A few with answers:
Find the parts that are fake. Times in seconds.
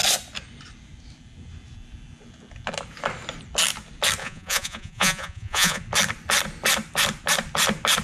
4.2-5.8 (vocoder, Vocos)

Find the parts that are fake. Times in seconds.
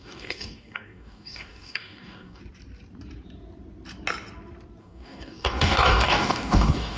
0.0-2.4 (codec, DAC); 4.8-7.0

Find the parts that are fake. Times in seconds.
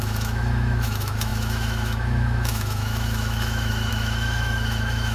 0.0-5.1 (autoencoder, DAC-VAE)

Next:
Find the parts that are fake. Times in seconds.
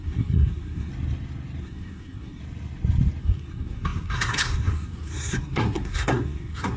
0.0-0.9 (codec, SNAC); 1.6-2.4; 3.2-6.8